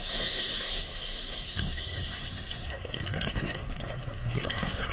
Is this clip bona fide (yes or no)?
no